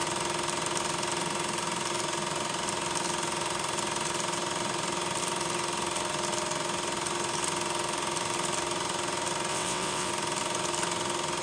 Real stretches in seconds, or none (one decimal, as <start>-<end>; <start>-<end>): 0.0-9.5; 10.1-11.4